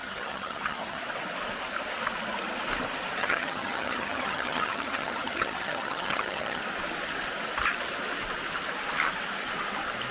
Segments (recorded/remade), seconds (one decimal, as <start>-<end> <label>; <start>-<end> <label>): 0.0-1.0 remade; 1.0-3.2 recorded; 3.2-6.6 remade; 6.6-10.1 recorded